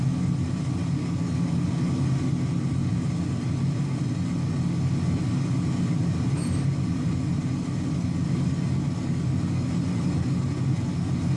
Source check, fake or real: real